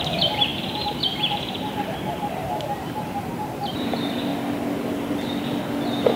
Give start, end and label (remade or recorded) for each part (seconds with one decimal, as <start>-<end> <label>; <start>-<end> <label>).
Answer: 0.0-4.3 remade; 4.3-6.2 recorded